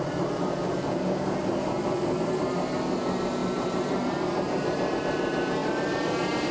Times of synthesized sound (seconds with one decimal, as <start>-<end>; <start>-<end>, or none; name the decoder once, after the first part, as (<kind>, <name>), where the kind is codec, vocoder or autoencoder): 3.4-5.0 (vocoder, BigVGAN v2)